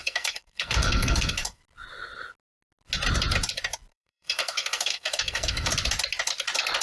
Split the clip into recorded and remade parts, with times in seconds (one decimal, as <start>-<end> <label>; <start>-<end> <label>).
0.0-1.6 remade; 1.6-3.9 recorded; 3.9-5.7 remade; 5.7-6.8 recorded